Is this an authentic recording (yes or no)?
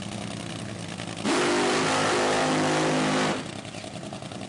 yes